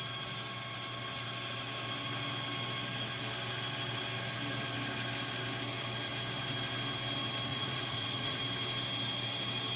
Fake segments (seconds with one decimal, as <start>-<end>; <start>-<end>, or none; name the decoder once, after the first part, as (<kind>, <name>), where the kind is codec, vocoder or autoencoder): 7.5-8.4 (vocoder, Vocos)